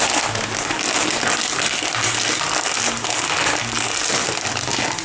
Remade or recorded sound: recorded